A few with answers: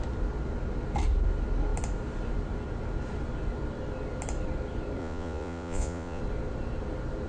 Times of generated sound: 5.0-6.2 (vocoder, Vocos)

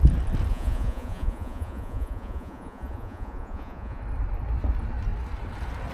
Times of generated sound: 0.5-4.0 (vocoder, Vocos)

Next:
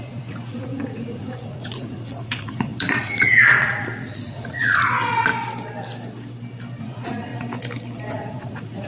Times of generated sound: 0.0-5.3 (vocoder, Vocos); 6.8-7.3; 8.1-8.9

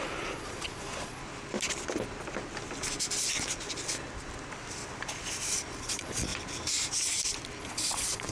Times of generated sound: 0.0-1.2 (vocoder, Vocos); 5.8-6.3; 7.6-8.3